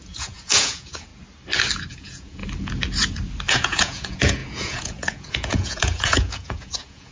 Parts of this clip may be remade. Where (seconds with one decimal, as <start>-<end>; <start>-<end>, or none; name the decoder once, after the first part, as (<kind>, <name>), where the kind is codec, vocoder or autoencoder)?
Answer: 0.0-1.1 (vocoder, Vocos); 1.9-2.4; 3.5-7.1